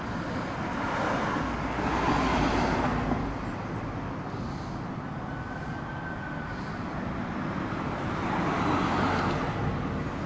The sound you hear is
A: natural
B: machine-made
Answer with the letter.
A